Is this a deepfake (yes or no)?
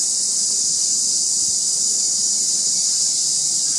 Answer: no